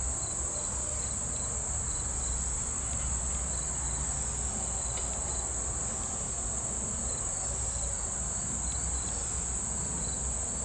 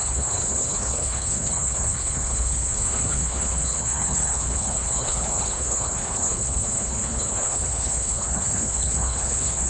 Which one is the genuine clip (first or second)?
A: first